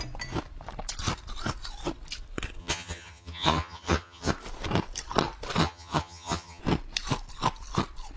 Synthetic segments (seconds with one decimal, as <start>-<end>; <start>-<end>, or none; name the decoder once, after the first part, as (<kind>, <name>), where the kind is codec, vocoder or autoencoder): 2.6-4.3 (vocoder, HiFi-GAN); 5.6-6.6